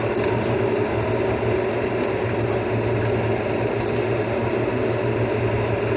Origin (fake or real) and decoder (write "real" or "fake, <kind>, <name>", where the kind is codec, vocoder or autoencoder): real